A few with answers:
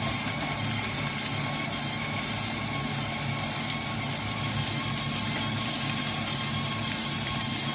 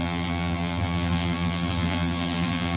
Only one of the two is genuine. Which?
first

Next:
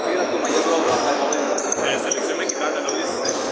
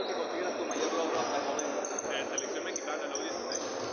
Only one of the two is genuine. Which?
second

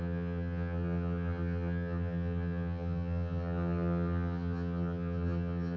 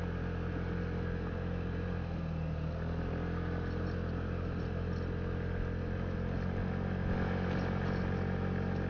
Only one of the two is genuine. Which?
second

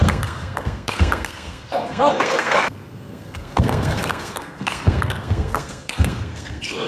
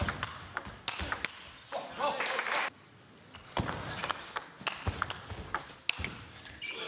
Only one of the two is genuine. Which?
second